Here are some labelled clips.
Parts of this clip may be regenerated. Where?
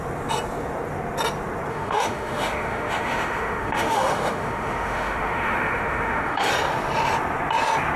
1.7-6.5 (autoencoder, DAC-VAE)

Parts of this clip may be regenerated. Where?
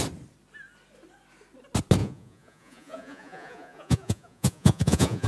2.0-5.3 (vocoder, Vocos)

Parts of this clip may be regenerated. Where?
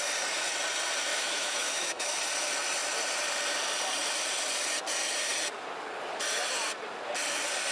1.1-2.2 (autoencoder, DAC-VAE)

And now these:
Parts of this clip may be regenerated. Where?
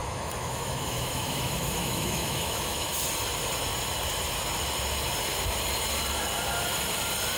0.0-2.9 (autoencoder, DAC-VAE)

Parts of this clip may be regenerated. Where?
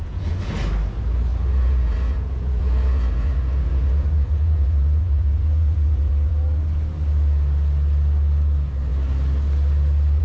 0.0-0.5 (vocoder, Vocos); 1.3-6.3